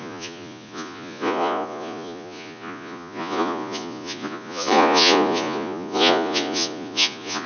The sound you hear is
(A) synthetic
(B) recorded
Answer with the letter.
A